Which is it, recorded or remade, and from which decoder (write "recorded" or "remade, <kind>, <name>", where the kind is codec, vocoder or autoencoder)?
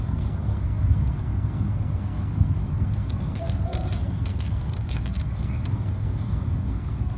remade, codec, SNAC